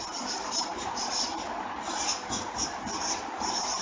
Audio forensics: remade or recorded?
recorded